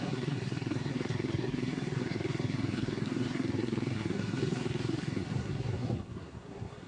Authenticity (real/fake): fake